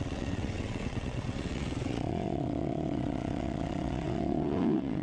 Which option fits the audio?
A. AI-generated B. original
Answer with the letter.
A